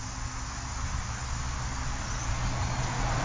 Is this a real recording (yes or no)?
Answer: yes